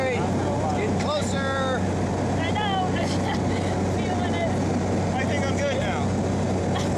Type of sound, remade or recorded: recorded